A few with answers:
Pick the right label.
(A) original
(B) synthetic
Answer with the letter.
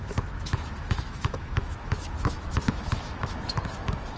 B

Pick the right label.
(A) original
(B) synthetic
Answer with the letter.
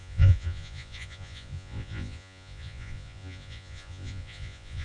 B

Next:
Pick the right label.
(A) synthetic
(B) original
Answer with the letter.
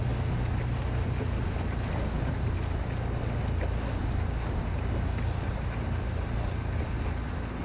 B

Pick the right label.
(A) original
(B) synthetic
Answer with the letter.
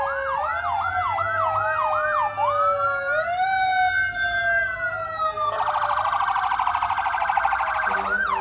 A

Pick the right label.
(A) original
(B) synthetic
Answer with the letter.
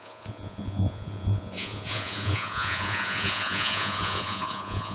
B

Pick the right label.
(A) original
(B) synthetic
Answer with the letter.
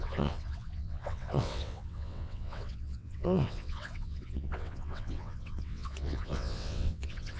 B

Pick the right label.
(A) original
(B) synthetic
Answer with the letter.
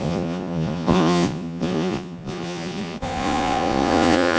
B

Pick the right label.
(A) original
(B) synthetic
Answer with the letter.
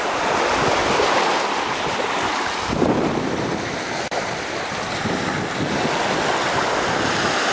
A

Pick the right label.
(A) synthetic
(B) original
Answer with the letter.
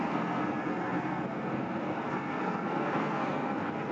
A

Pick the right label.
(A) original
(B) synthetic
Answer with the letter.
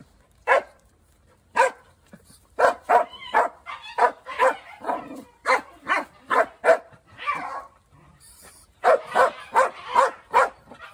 B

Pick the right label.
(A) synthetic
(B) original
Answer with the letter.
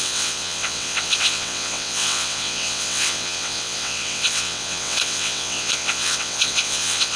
A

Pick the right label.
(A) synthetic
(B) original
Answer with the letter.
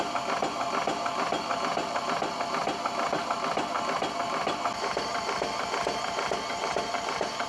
B